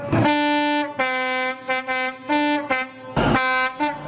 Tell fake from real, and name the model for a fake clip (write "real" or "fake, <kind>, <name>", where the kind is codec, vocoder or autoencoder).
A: real